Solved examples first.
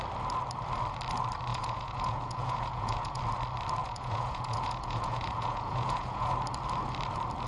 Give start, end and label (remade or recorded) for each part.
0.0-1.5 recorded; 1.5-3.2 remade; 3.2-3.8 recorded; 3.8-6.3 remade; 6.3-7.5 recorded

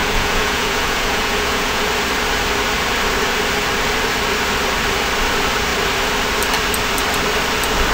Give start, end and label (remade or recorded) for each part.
0.0-1.9 remade; 1.9-7.9 recorded

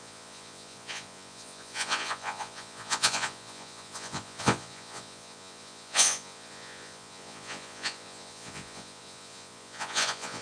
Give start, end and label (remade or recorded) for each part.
0.0-10.4 remade

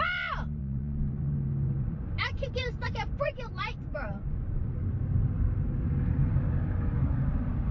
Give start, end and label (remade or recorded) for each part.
0.0-0.6 recorded; 0.6-4.8 remade; 4.8-7.7 recorded

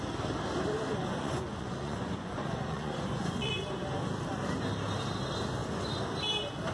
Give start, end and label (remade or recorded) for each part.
0.0-1.0 recorded; 1.0-3.5 remade; 3.5-6.7 recorded

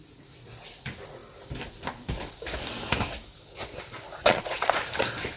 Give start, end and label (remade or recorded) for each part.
0.0-4.2 recorded; 4.2-4.8 remade; 4.8-5.4 recorded

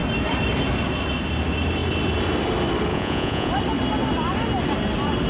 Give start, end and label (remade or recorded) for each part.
0.0-2.9 recorded; 2.9-3.5 remade; 3.5-5.3 recorded